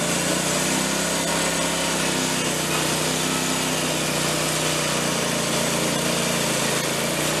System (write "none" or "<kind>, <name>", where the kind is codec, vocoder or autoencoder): none